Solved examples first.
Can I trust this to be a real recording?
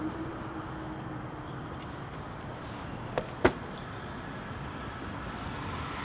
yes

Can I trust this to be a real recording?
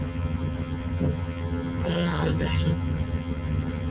no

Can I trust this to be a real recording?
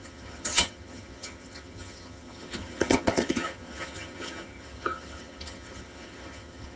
no